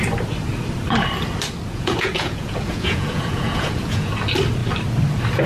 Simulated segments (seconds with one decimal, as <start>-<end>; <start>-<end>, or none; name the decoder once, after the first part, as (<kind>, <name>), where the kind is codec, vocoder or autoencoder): 1.7-4.1 (vocoder, Vocos)